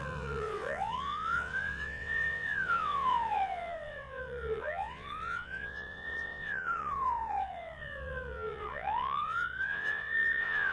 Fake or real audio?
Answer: fake